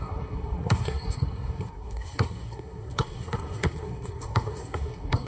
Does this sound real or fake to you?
fake